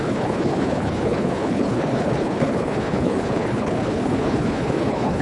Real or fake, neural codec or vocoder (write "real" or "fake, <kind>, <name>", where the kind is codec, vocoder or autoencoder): fake, codec, HILCodec